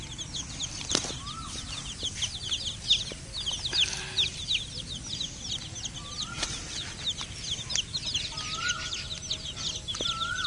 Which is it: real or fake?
real